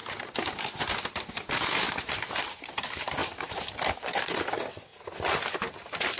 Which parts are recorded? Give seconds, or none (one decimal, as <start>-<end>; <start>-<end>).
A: 0.0-6.2